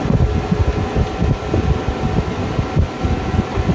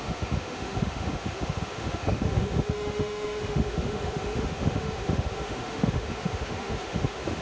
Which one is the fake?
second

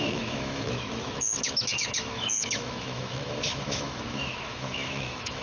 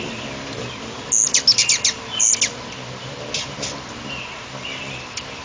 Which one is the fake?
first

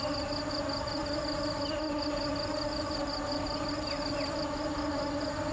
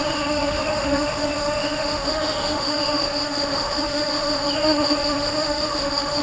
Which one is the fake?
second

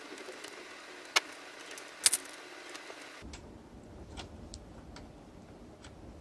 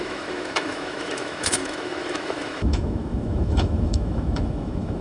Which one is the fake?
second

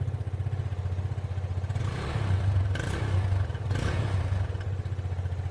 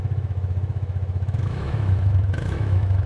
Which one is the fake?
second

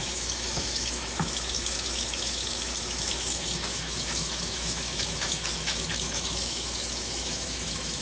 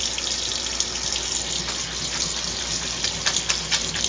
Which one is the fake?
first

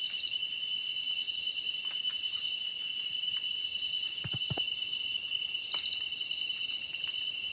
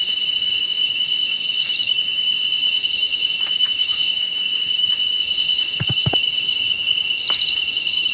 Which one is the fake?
second